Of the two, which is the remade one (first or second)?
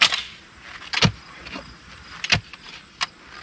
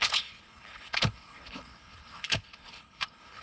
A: second